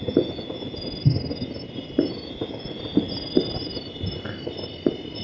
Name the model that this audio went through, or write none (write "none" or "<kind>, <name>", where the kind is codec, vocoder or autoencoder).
none